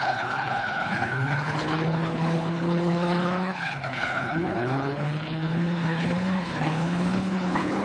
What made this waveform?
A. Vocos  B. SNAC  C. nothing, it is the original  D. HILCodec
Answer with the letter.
D